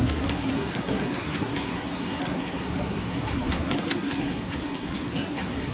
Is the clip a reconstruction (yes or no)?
yes